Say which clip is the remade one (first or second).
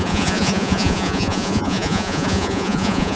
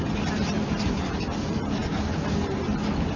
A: first